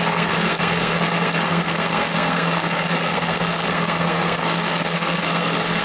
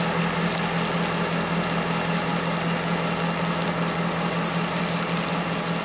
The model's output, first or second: first